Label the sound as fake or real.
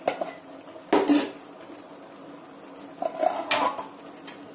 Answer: real